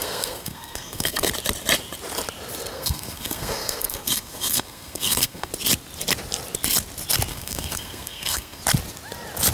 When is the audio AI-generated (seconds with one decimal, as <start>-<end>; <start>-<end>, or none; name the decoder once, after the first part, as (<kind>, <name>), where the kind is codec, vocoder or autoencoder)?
0.0-1.3 (codec, SNAC); 2.7-5.5; 7.3-8.6